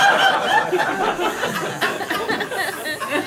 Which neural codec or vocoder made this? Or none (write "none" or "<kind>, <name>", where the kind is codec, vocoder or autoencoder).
none